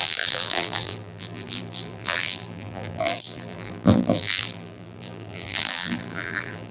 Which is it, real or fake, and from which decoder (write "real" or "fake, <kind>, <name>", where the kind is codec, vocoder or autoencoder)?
fake, vocoder, BigVGAN v2